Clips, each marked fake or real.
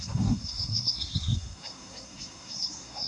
fake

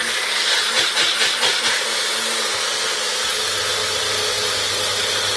real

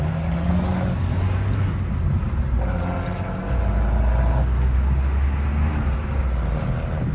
real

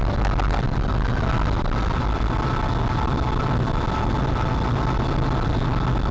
real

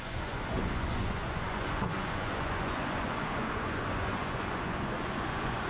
fake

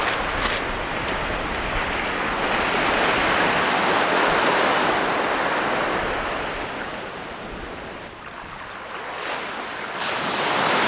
real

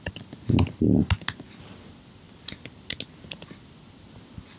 real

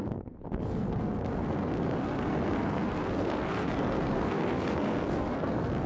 fake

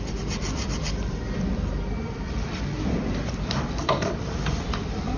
fake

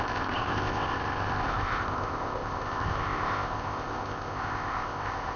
fake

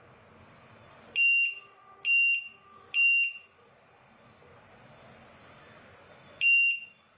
real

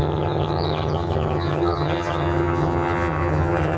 fake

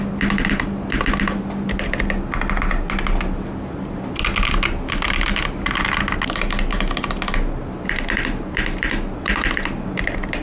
real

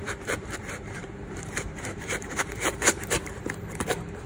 fake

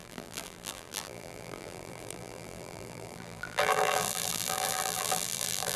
fake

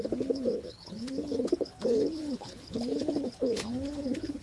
fake